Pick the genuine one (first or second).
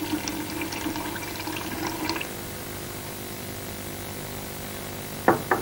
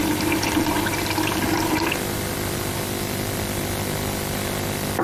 first